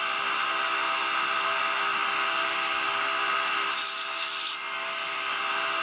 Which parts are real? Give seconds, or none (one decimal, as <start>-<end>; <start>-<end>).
0.0-5.8